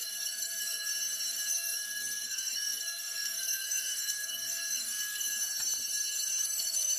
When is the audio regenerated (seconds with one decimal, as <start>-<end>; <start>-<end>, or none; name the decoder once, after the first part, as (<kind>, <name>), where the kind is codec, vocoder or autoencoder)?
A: 0.0-0.9 (codec, SNAC); 1.5-5.3; 6.4-7.0